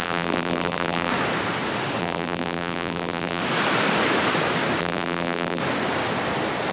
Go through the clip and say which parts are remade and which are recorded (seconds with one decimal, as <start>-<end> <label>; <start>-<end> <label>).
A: 0.0-1.1 remade; 1.1-2.0 recorded; 2.0-3.4 remade; 3.4-4.8 recorded; 4.8-5.6 remade; 5.6-6.7 recorded